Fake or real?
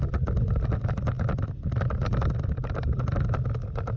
real